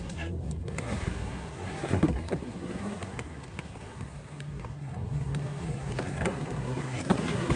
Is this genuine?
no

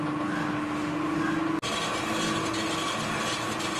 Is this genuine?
yes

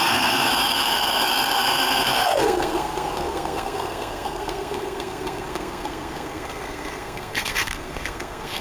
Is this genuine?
no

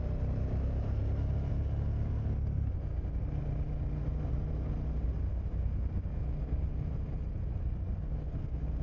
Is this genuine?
yes